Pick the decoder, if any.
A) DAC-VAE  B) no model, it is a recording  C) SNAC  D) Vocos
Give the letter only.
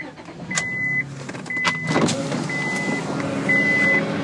B